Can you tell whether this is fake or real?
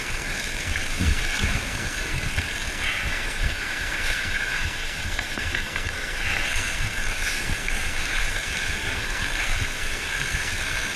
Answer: fake